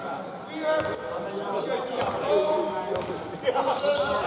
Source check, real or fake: real